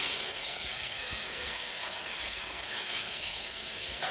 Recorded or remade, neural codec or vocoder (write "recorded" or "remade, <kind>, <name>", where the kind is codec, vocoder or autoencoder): remade, codec, SNAC